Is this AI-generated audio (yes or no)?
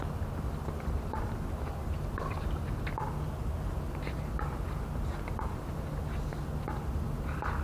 no